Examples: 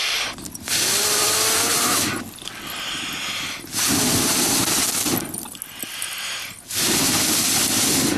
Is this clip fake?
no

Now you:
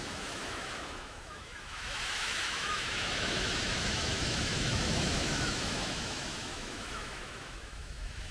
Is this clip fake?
yes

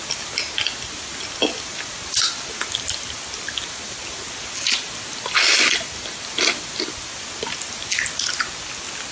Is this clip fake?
no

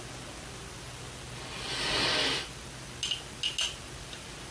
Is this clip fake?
no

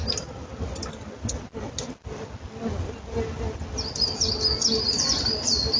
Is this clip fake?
no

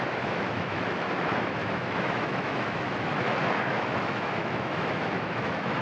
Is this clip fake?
yes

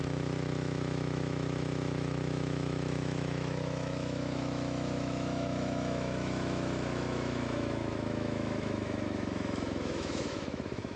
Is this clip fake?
yes